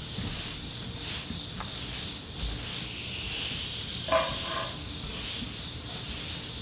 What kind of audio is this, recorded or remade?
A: recorded